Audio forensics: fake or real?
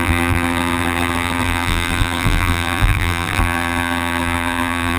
fake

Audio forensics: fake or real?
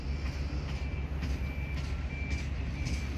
real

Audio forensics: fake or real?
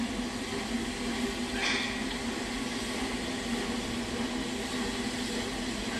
real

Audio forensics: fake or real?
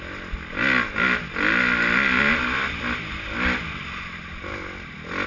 real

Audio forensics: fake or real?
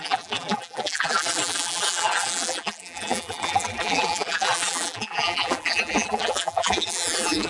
fake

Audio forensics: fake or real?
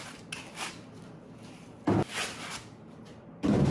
real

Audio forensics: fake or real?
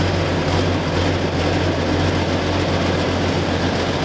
real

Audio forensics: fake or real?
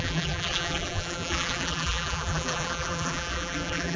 fake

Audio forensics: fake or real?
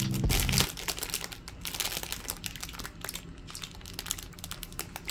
real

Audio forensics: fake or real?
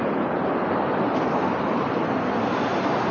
real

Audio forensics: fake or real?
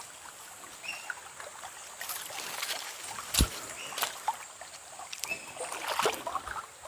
real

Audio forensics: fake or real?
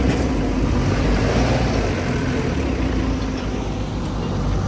real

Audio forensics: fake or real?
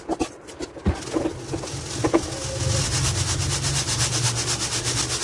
real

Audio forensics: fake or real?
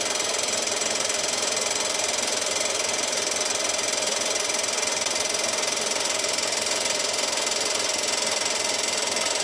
fake